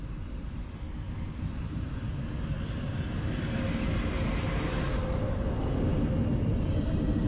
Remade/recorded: recorded